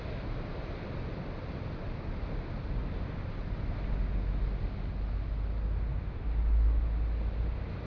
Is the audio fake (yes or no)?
no